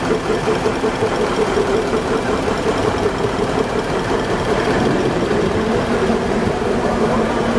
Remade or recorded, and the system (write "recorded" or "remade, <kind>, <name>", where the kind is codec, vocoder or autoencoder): remade, vocoder, BigVGAN v2